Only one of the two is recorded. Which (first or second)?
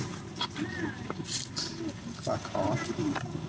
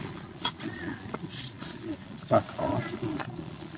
first